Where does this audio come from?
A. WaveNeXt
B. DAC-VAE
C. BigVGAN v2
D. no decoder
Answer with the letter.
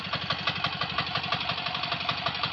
D